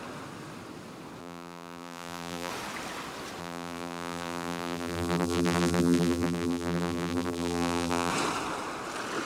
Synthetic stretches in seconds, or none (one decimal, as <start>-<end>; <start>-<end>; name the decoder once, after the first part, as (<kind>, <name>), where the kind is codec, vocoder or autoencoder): 1.2-2.5 (vocoder, BigVGAN v2); 3.4-8.1

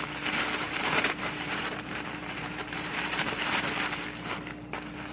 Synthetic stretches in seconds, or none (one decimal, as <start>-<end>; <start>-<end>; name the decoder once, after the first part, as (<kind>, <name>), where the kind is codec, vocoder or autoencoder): 0.6-3.7 (vocoder, BigVGAN v2)

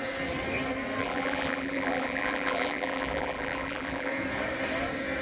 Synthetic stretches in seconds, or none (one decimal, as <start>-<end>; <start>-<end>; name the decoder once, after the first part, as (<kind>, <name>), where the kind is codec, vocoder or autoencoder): 1.0-4.1 (vocoder, BigVGAN v2)

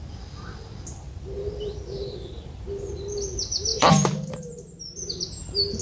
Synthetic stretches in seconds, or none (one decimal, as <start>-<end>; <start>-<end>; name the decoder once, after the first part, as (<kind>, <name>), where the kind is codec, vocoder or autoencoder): 3.7-4.5 (vocoder, BigVGAN v2)

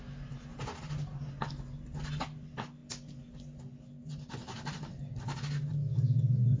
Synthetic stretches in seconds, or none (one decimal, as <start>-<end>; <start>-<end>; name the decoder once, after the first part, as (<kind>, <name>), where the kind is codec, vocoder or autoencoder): 0.5-1.3 (vocoder, BigVGAN v2)

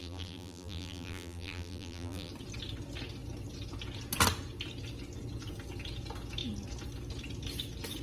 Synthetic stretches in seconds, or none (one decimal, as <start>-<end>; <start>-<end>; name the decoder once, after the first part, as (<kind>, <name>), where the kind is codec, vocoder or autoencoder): 0.0-2.3 (vocoder, BigVGAN v2)